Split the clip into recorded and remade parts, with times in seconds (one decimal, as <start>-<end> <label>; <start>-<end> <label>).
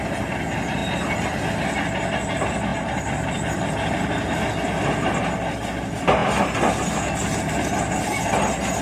0.0-2.7 recorded; 2.7-3.7 remade; 3.7-8.8 recorded